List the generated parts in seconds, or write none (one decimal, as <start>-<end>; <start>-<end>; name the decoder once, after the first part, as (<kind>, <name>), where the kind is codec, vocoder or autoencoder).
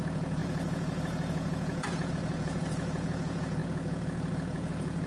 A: 0.0-5.1 (vocoder, Vocos)